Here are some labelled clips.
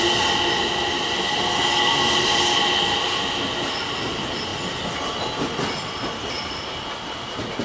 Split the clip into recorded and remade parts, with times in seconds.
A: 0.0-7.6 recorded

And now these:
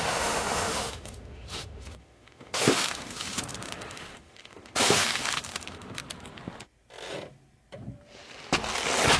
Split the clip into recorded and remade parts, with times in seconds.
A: 0.0-6.0 remade; 6.0-9.2 recorded

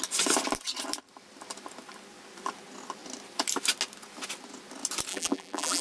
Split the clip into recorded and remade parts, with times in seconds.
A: 0.0-5.1 recorded; 5.1-5.8 remade

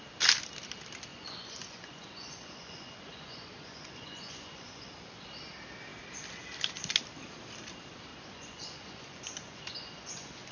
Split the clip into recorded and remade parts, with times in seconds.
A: 0.0-1.1 recorded; 1.1-4.9 remade; 4.9-8.1 recorded; 8.1-10.5 remade

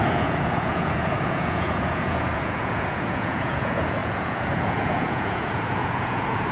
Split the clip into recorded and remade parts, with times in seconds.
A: 0.0-6.5 remade

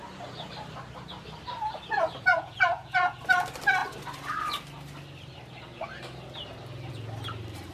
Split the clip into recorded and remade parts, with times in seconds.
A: 0.0-2.3 recorded; 2.3-3.2 remade; 3.2-7.7 recorded

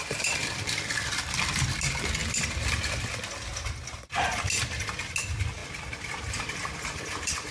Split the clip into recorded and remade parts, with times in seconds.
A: 0.0-0.4 recorded; 0.4-1.7 remade; 1.7-2.2 recorded; 2.2-2.8 remade; 2.8-5.6 recorded; 5.6-7.5 remade